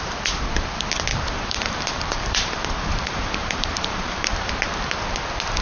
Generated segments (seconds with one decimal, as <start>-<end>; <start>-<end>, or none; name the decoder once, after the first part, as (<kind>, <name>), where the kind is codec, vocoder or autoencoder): 1.1-4.5 (vocoder, BigVGAN v2)